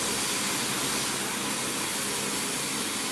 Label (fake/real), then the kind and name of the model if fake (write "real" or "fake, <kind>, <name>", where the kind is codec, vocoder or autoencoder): real